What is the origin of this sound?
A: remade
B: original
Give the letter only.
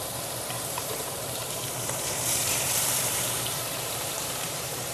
A